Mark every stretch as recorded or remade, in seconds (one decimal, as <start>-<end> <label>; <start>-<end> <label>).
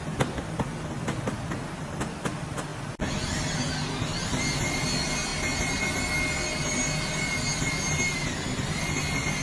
0.0-9.4 recorded